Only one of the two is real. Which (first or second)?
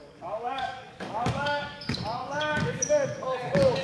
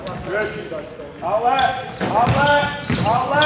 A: second